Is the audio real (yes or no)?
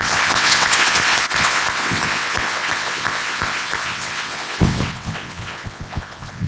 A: no